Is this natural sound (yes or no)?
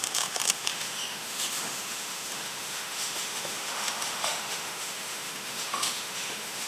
no